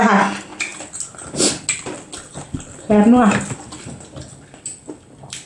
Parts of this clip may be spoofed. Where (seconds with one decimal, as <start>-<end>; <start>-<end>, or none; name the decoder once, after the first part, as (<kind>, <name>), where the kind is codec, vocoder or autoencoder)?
none